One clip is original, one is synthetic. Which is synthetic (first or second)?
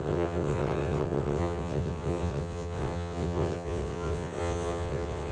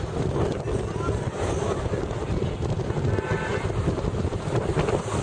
first